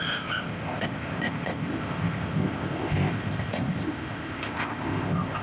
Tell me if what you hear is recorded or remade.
remade